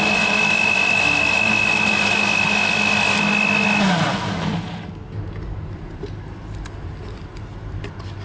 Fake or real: real